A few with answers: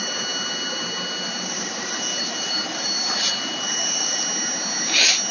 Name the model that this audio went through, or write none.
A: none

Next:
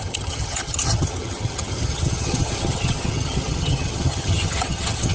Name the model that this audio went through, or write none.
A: vocoder, HiFi-GAN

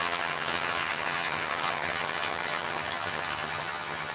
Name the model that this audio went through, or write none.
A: vocoder, HiFi-GAN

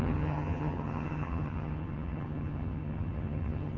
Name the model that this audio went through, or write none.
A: vocoder, HiFi-GAN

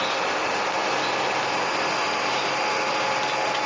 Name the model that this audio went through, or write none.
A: none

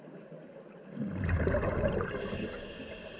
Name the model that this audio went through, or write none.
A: none